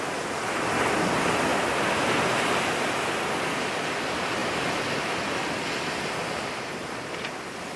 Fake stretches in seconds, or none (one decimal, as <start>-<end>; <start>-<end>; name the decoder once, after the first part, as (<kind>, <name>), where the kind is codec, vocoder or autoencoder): none